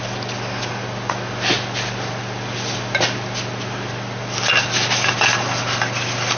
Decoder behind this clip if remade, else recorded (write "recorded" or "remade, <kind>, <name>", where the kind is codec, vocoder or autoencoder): recorded